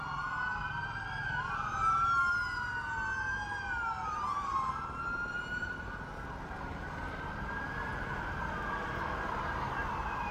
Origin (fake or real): real